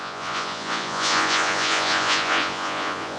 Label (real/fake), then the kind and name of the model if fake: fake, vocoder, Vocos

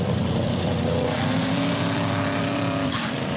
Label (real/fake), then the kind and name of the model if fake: fake, vocoder, BigVGAN v2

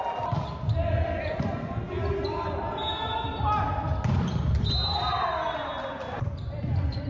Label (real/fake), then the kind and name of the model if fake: real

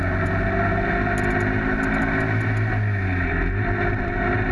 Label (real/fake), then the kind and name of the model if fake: real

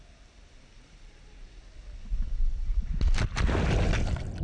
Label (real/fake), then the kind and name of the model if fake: real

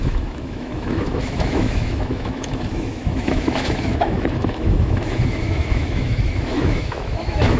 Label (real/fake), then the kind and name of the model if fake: fake, autoencoder, DAC-VAE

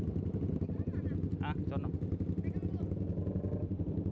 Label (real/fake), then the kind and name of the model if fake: real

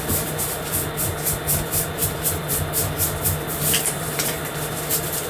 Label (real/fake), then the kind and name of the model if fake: fake, vocoder, BigVGAN v2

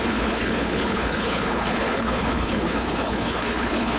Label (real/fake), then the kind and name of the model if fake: fake, codec, HILCodec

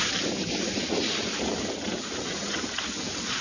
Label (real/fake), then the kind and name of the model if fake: real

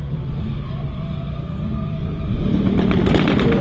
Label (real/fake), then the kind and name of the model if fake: real